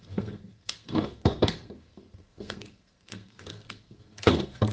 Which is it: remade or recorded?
remade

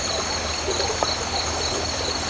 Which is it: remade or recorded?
recorded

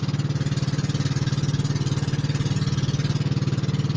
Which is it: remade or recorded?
recorded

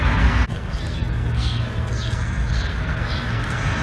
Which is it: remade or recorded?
remade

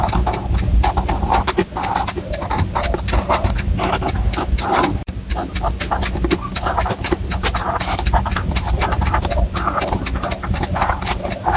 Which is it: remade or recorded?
remade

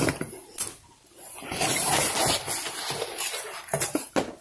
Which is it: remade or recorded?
recorded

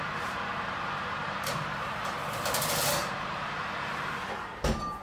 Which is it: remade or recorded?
remade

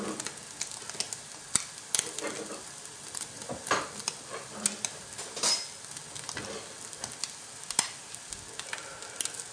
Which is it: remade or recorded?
recorded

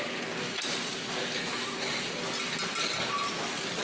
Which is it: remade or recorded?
recorded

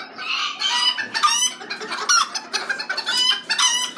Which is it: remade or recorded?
recorded